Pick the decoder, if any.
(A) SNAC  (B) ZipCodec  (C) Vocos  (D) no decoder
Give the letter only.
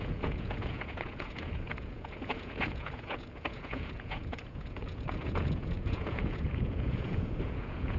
C